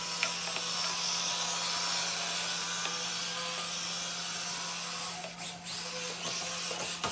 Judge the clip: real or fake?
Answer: real